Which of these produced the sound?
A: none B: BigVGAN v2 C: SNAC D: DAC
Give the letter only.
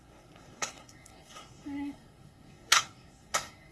C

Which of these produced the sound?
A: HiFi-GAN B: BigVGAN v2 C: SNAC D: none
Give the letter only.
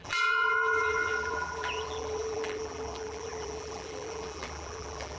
B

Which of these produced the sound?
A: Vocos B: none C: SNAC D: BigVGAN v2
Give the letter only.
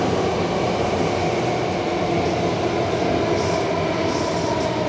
B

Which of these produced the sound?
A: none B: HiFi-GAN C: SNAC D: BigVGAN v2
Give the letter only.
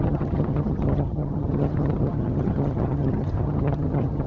B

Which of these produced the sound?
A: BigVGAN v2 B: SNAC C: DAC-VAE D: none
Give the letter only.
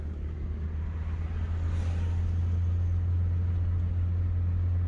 D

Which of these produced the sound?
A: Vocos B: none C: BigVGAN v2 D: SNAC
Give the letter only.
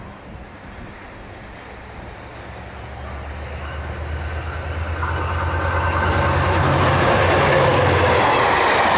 B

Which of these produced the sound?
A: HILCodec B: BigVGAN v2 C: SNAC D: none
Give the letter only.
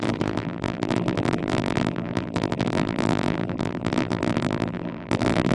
B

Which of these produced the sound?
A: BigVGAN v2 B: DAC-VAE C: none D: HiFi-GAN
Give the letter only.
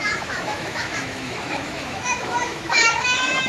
B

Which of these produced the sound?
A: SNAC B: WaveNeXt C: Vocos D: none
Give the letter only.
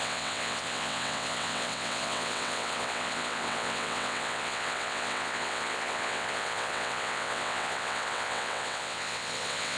B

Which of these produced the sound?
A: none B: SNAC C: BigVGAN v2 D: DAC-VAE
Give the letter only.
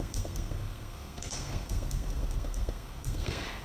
B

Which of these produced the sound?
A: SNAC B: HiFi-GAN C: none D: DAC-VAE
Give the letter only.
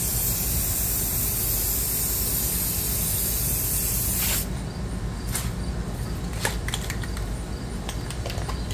C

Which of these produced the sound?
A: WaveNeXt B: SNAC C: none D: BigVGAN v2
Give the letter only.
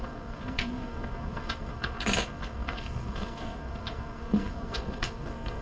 B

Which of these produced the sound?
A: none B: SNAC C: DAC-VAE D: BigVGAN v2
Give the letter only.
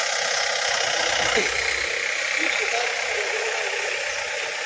A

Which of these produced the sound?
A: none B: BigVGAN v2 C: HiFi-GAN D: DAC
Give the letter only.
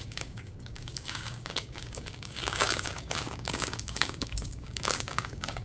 D